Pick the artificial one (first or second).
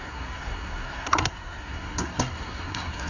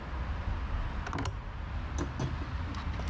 first